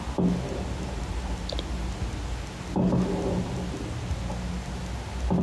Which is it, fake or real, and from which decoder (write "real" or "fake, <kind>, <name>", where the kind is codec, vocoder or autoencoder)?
real